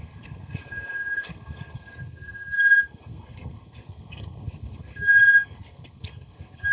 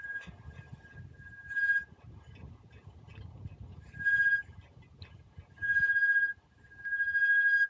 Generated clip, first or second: first